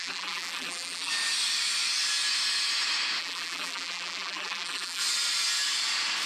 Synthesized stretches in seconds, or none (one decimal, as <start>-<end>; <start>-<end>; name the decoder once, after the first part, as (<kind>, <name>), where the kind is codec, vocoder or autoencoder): 0.0-1.1 (vocoder, BigVGAN v2); 3.2-5.0